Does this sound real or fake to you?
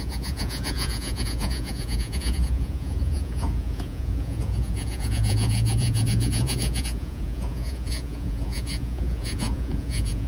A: fake